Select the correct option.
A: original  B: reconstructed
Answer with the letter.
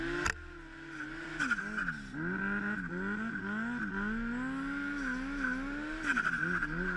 A